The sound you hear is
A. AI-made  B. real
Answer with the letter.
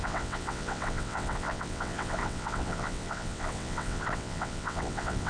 A